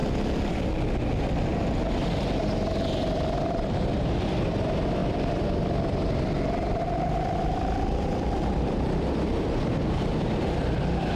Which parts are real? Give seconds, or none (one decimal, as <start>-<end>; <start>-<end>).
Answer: 0.0-1.1; 1.5-3.4